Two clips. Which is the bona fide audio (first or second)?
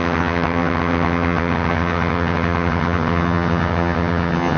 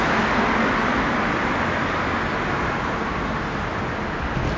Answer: second